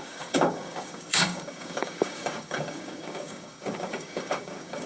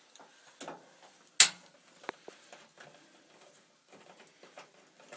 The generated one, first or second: first